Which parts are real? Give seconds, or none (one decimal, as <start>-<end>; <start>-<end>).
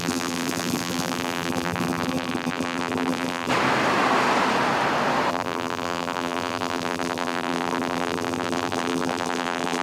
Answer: 3.5-5.3